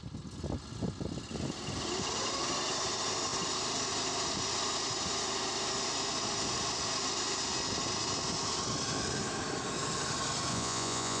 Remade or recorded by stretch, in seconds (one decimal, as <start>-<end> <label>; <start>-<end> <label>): 0.0-10.5 recorded; 10.5-11.2 remade